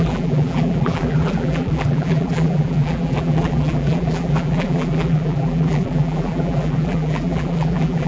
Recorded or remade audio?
remade